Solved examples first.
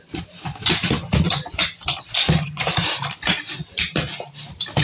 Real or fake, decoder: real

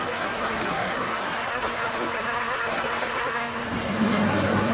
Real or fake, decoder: fake, codec, SNAC